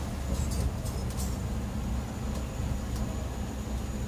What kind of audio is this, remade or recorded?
recorded